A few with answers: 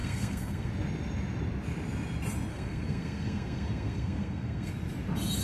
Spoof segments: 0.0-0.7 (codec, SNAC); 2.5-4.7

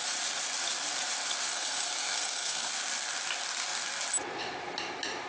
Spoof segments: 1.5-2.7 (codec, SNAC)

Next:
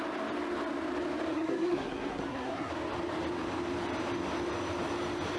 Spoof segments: 1.3-2.7 (codec, SNAC)

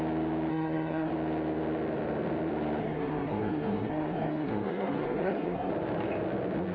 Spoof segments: 0.5-1.1 (codec, SNAC); 2.8-5.7

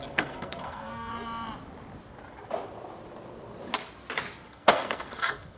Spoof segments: 0.0-1.1 (codec, SNAC); 4.5-5.6

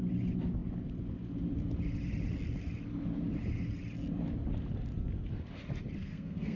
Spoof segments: 6.0-6.6 (codec, SNAC)

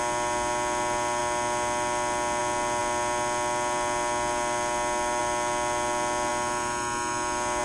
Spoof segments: none

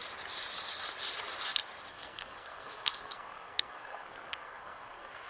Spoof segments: 1.9-5.3 (codec, SNAC)